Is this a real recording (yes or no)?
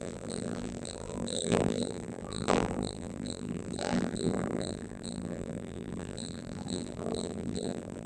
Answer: no